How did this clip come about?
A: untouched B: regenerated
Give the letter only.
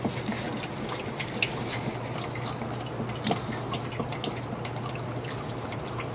A